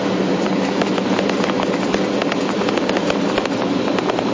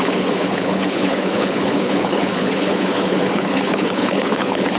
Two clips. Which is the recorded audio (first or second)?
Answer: first